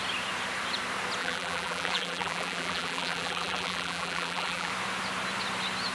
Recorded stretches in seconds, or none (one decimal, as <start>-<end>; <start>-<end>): 0.0-1.2; 4.7-5.9